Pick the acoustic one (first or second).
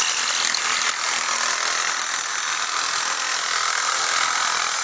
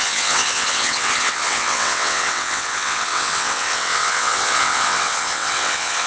first